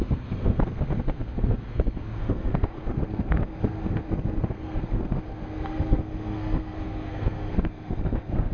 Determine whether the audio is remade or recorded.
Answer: remade